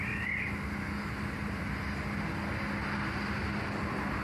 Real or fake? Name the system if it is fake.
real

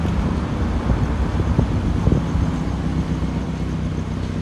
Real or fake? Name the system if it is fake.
real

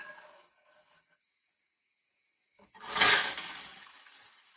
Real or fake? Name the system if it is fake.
fake, codec, DAC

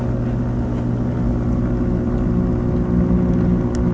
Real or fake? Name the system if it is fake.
real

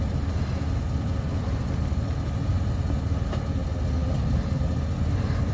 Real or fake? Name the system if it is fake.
real